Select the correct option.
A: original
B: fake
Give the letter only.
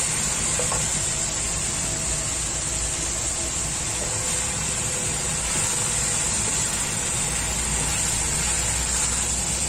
A